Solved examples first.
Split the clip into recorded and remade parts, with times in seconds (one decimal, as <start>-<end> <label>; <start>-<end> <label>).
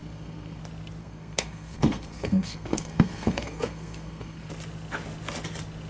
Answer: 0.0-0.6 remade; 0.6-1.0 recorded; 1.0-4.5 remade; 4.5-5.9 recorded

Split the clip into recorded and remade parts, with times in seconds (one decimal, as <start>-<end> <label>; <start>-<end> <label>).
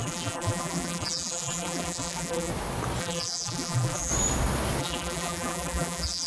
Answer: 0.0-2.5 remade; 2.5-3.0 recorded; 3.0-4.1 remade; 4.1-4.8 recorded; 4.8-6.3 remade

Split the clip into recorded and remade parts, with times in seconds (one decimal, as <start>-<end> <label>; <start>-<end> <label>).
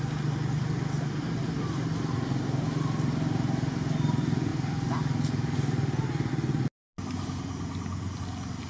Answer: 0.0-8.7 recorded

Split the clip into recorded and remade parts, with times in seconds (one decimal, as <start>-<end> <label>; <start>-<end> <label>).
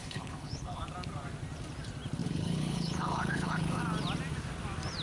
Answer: 0.0-0.8 remade; 0.8-2.2 recorded; 2.2-3.8 remade; 3.8-5.0 recorded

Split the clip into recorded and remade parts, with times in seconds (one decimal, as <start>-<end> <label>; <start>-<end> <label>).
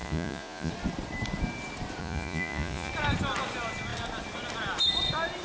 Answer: 0.0-0.7 remade; 0.7-2.0 recorded; 2.0-2.9 remade; 2.9-5.4 recorded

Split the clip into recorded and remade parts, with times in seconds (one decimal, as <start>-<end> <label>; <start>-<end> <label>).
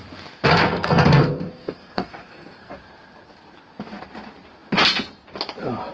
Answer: 0.0-0.7 recorded; 0.7-2.7 remade; 2.7-5.9 recorded